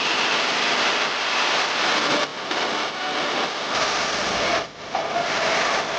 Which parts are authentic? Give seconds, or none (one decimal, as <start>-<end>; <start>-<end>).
0.0-6.0